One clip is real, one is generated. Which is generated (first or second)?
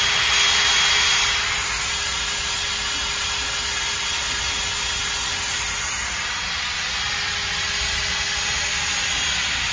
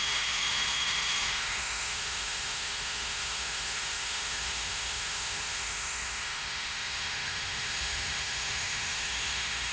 second